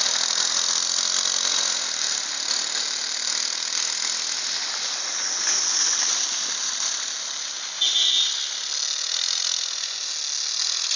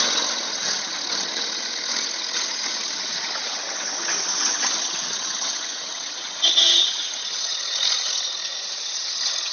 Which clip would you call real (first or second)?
first